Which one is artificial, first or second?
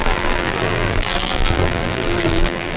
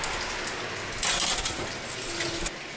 first